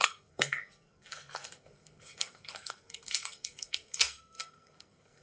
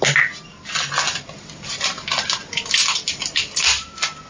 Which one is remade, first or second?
first